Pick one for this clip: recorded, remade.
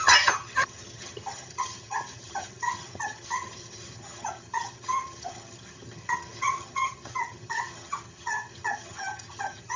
remade